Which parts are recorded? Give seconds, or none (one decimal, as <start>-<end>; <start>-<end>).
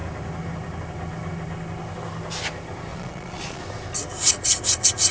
0.0-2.9; 3.6-5.1